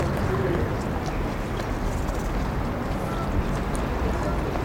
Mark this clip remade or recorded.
recorded